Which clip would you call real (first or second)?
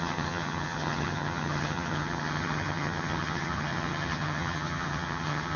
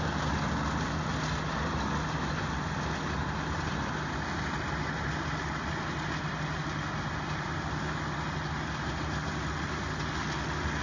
second